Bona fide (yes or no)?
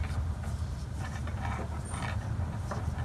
yes